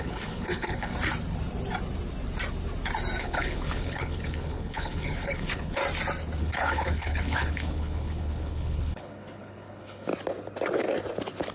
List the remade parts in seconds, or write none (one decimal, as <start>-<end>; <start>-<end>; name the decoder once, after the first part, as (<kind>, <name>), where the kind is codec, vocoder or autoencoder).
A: 0.0-0.9 (codec, HILCodec); 3.2-5.8; 6.4-10.1